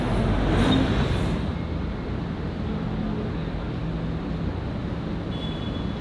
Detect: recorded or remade recorded